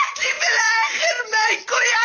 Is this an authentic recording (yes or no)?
no